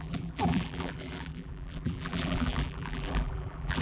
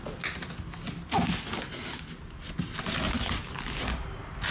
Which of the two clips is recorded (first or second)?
second